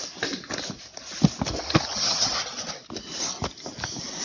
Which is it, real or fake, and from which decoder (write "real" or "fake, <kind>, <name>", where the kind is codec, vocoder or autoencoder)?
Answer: real